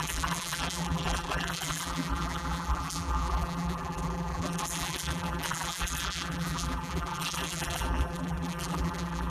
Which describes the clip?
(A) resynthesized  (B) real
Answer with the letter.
A